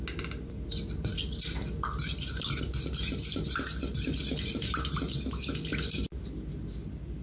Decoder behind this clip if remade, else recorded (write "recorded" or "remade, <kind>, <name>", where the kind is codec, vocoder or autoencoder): recorded